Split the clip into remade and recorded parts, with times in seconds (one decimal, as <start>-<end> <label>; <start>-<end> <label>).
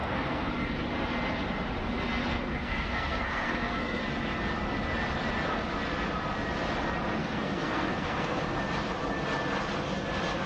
0.0-0.5 remade; 0.5-2.3 recorded; 2.3-4.0 remade; 4.0-7.2 recorded; 7.2-8.4 remade; 8.4-10.5 recorded